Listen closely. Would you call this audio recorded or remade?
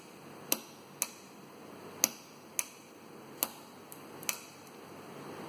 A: recorded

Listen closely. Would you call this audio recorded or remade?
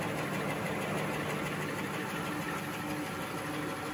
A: recorded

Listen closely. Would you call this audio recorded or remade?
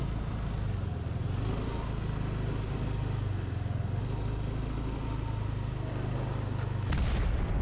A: recorded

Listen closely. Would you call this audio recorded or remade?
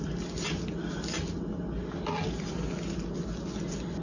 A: recorded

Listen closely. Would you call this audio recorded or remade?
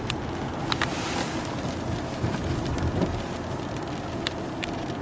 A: recorded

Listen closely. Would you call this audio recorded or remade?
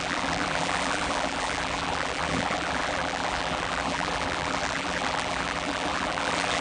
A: remade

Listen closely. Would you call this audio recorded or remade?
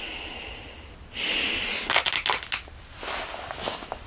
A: recorded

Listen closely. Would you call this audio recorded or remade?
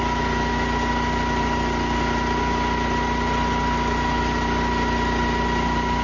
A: recorded